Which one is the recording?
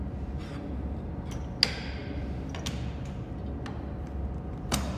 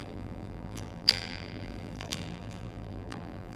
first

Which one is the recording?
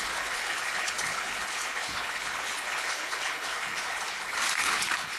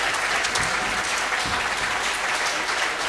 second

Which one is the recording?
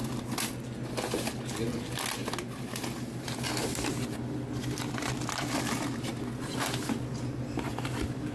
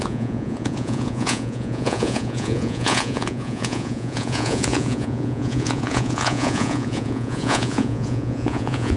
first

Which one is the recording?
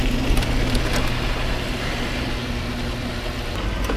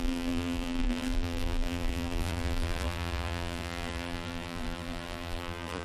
first